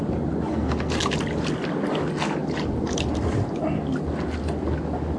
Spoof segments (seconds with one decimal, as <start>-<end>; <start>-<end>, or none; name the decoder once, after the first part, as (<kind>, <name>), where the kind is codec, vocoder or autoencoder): 0.5-1.0 (codec, SNAC)